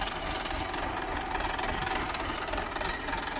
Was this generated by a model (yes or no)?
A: no